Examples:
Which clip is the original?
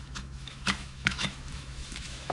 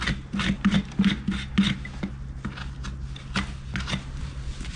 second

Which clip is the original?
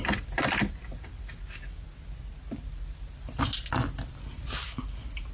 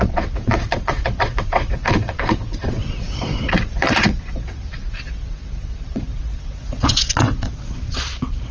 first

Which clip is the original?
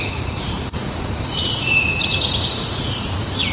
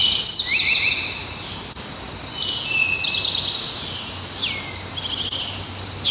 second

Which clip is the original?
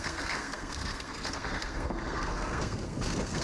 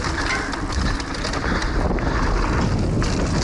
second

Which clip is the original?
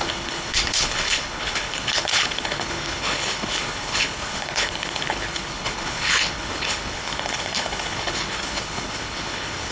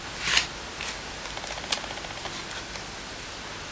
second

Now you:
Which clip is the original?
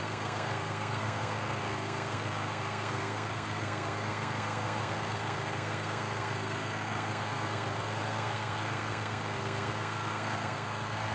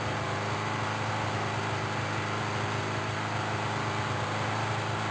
second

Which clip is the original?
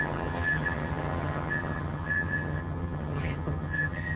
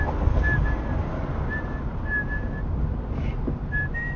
second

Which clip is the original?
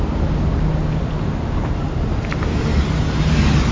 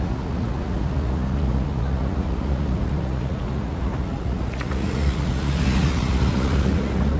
first